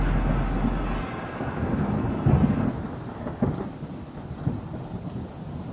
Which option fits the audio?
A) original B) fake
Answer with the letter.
A